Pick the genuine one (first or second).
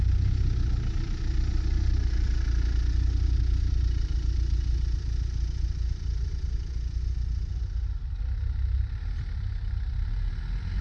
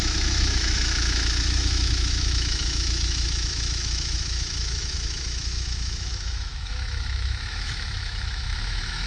first